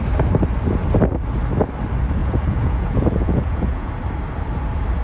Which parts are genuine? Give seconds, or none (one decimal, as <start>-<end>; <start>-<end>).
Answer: 0.0-2.2; 3.9-5.0